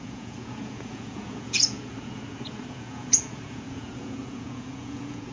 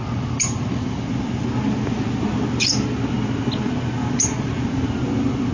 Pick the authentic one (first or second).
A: second